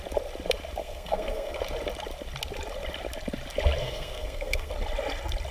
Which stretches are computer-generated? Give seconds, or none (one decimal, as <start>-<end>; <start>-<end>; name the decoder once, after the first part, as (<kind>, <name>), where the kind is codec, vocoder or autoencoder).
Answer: 0.8-1.6 (codec, SNAC); 3.8-4.7